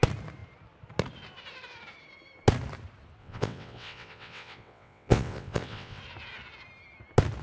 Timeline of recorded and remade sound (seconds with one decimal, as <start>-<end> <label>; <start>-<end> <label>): 0.0-3.2 recorded; 3.2-6.0 remade; 6.0-7.4 recorded